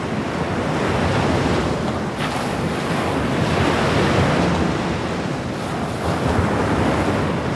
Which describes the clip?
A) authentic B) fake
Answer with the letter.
A